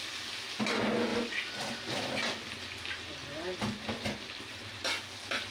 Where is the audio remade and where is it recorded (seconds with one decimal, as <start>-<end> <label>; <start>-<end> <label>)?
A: 0.0-0.6 remade; 0.6-1.1 recorded; 1.1-2.6 remade; 2.6-3.2 recorded; 3.2-5.0 remade; 5.0-5.5 recorded